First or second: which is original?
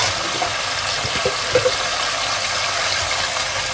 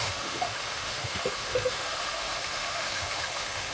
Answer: first